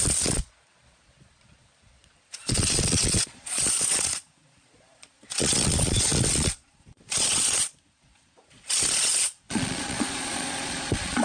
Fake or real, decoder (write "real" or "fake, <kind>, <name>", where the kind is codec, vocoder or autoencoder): fake, vocoder, Vocos